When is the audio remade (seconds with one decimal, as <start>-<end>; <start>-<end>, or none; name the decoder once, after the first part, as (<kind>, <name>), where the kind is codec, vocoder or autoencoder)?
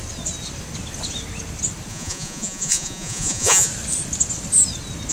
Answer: 1.9-3.7 (vocoder, Vocos)